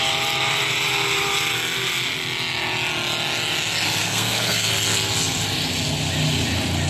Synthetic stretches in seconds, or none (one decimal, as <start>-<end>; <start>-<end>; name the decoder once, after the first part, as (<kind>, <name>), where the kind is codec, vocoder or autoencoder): 4.0-4.7 (codec, SNAC)